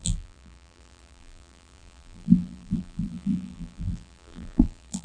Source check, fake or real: fake